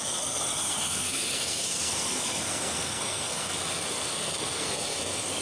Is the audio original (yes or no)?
no